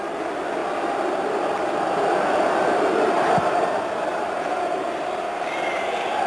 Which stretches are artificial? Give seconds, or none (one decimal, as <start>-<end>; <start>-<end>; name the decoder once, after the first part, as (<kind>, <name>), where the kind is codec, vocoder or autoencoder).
0.0-0.6 (vocoder, BigVGAN v2); 1.2-6.3